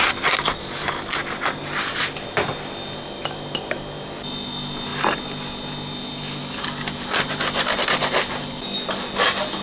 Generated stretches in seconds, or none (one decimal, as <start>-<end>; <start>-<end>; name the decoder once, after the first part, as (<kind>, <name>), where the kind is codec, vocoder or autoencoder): none